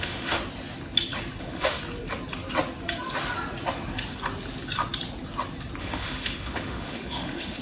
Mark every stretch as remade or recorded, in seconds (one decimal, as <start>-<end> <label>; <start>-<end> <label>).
0.0-0.4 remade; 0.4-1.4 recorded; 1.4-1.8 remade; 1.8-5.8 recorded; 5.8-7.6 remade